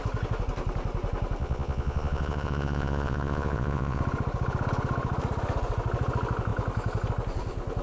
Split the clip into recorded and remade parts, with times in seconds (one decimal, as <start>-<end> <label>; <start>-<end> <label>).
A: 0.0-1.4 recorded; 1.4-4.0 remade; 4.0-7.8 recorded